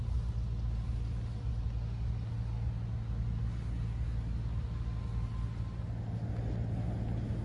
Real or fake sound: real